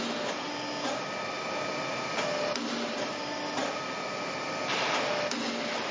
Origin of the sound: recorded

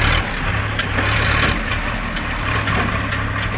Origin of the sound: recorded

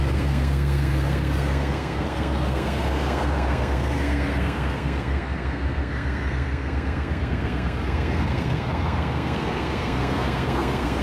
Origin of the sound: remade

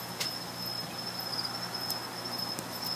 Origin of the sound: recorded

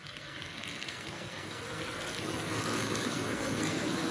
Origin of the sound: remade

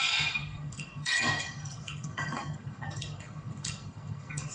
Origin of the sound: remade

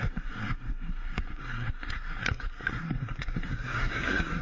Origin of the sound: remade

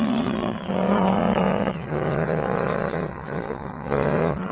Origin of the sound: remade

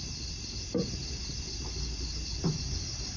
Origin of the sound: recorded